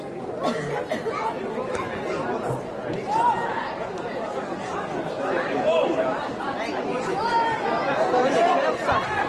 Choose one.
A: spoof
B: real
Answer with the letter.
B